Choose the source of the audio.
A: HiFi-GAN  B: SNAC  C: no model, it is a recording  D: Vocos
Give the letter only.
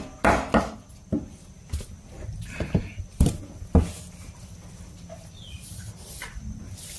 C